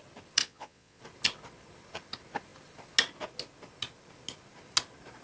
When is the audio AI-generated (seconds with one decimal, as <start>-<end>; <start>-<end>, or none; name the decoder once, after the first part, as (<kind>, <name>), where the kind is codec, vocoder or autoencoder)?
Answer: 0.4-1.0 (vocoder, Vocos)